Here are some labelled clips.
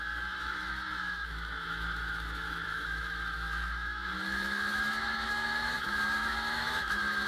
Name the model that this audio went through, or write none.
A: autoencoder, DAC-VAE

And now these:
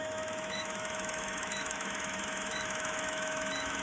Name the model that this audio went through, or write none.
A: autoencoder, DAC-VAE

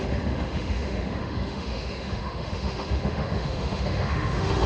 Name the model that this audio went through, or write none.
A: autoencoder, DAC-VAE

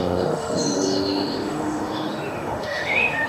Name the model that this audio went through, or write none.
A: autoencoder, DAC-VAE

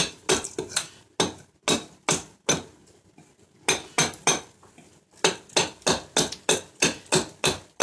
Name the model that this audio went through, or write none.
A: none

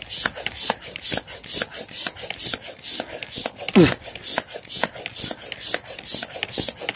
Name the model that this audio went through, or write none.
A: none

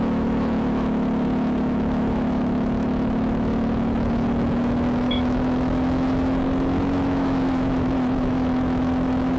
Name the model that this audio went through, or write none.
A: autoencoder, DAC-VAE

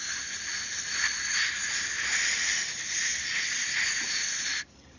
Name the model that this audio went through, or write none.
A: none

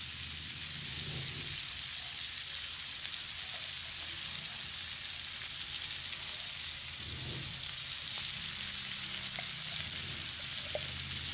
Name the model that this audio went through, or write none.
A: none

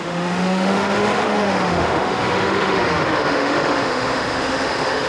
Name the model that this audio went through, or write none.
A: autoencoder, DAC-VAE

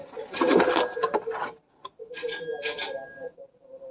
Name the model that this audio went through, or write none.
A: none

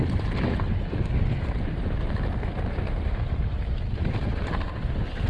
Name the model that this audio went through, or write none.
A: none